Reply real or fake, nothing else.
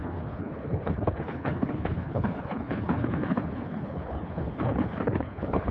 fake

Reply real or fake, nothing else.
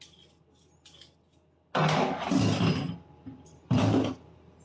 real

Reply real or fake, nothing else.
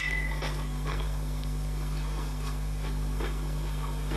fake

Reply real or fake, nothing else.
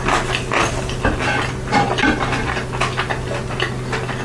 real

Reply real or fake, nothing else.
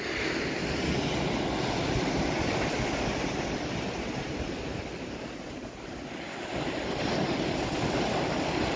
real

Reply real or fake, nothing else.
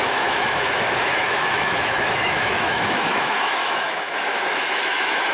fake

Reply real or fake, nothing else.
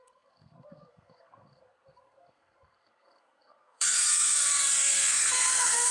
fake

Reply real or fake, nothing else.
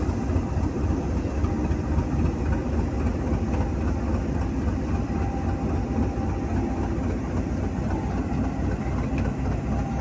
real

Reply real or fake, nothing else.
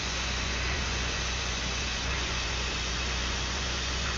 fake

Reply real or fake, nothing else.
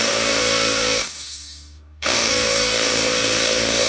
fake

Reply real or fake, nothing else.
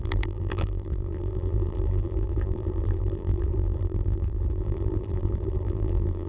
fake